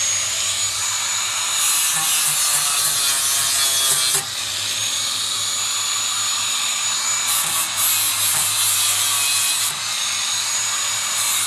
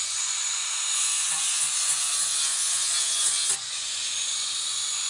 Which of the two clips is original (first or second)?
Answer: first